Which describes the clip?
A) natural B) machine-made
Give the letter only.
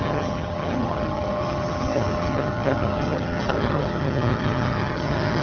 B